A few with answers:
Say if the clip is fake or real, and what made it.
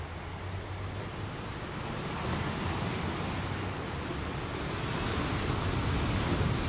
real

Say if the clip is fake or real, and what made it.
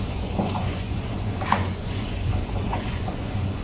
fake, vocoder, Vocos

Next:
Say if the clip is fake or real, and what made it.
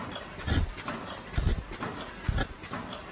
real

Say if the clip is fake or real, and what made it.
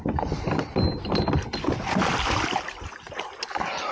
real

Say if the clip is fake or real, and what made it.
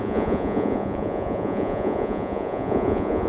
fake, vocoder, Vocos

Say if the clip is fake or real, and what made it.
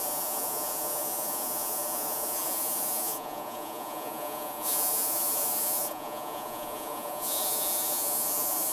fake, vocoder, Vocos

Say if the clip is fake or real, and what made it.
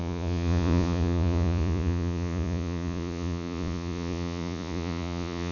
fake, vocoder, Vocos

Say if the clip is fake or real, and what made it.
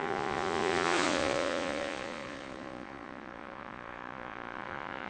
fake, vocoder, Vocos